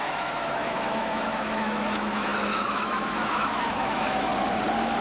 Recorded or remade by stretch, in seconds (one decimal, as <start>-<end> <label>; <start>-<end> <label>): 0.0-4.3 remade; 4.3-5.0 recorded